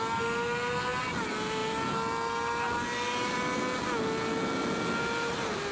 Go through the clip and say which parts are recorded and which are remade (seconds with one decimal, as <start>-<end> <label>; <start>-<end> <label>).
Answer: 0.0-5.7 recorded